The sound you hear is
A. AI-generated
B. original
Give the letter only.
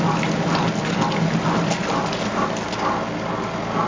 B